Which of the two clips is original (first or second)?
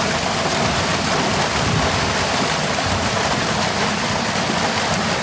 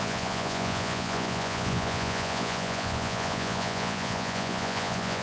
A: first